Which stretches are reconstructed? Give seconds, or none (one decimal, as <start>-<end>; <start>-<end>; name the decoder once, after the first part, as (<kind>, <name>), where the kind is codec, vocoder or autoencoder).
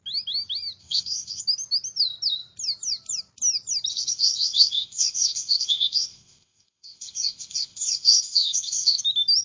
0.8-1.4 (codec, ZipCodec); 3.9-9.0